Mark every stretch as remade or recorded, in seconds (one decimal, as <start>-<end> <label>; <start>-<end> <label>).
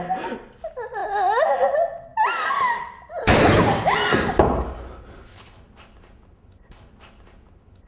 0.0-7.9 recorded